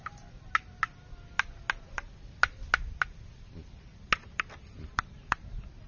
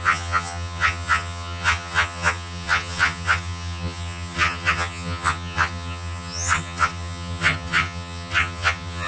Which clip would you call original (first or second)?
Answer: first